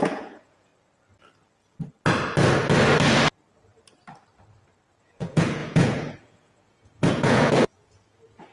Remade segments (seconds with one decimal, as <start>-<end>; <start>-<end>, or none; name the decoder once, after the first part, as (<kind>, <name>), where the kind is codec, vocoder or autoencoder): 0.0-0.7 (vocoder, Vocos); 5.0-8.5